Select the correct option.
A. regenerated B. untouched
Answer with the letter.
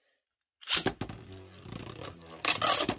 B